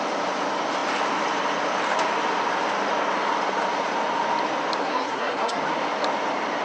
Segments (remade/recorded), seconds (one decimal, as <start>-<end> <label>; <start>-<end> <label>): 0.0-4.8 recorded; 4.8-5.6 remade; 5.6-6.6 recorded